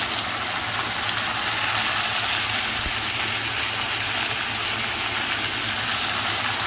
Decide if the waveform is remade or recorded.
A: recorded